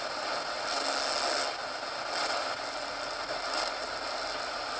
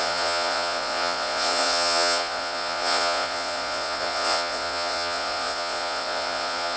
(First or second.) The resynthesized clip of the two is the second